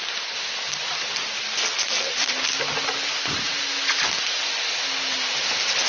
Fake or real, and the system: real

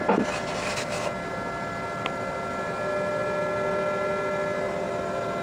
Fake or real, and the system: real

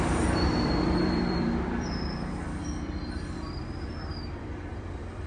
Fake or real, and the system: fake, vocoder, BigVGAN v2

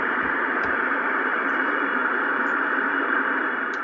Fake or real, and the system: fake, vocoder, BigVGAN v2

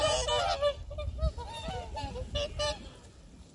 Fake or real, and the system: real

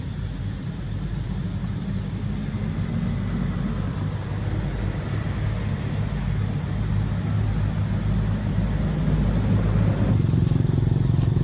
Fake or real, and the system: real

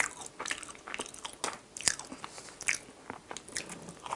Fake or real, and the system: real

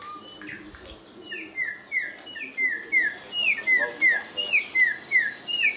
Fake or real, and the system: real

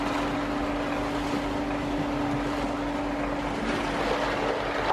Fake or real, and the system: real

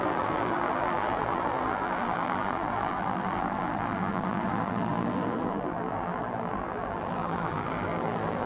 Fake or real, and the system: fake, vocoder, BigVGAN v2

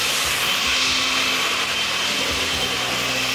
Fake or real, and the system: real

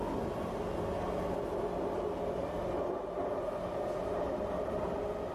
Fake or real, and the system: real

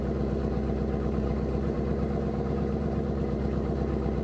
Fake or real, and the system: fake, vocoder, BigVGAN v2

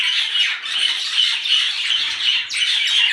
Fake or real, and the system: fake, vocoder, BigVGAN v2